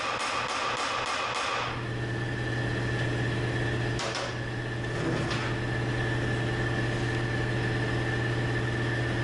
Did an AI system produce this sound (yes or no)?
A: no